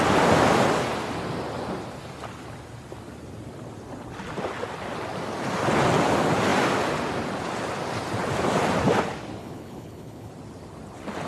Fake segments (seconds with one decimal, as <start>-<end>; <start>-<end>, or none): 9.4-10.3